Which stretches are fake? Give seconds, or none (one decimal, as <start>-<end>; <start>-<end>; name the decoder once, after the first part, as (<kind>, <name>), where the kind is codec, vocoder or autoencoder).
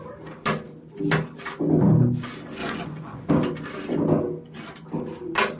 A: 2.6-3.3 (vocoder, Vocos)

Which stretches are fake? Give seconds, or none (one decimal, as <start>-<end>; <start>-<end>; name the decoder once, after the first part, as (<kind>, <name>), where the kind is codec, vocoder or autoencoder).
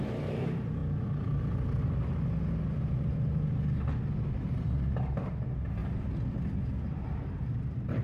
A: 0.0-0.8 (vocoder, BigVGAN v2); 4.3-5.8; 7.2-8.0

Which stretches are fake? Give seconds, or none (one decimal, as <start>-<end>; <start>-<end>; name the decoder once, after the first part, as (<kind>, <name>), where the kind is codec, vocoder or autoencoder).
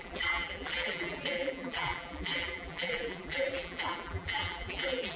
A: 0.0-5.2 (vocoder, BigVGAN v2)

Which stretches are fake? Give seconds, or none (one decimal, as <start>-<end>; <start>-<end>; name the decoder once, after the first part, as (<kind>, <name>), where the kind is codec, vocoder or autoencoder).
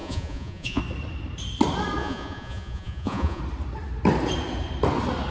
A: 0.0-0.8 (vocoder, Vocos); 2.0-3.4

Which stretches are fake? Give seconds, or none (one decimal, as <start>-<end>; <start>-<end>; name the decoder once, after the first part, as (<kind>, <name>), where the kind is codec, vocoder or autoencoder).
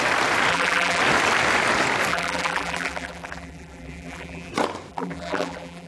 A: 0.5-1.0 (vocoder, BigVGAN v2); 2.1-4.5; 4.9-5.9